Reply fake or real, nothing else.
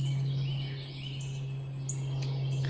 real